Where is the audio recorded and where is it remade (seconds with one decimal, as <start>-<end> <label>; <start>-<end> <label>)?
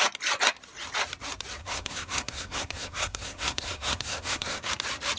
0.0-1.6 recorded; 1.6-4.7 remade; 4.7-5.2 recorded